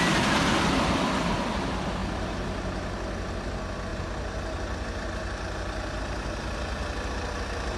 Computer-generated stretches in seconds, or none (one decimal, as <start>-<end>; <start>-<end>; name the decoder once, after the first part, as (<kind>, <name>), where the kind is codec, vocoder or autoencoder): none